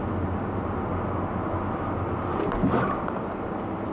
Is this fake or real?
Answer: real